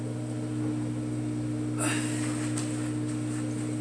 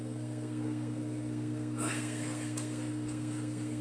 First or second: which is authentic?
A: first